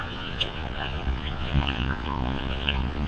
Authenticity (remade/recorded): remade